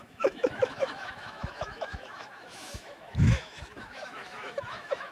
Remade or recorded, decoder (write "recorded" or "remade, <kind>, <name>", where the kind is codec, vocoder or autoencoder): remade, autoencoder, DAC-VAE